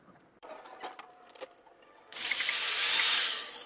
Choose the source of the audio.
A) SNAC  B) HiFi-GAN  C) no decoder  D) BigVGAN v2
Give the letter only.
D